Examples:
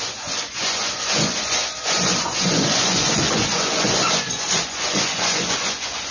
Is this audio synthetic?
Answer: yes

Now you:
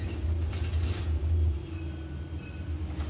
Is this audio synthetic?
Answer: no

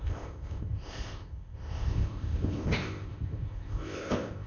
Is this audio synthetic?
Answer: yes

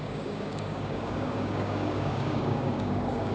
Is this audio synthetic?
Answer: yes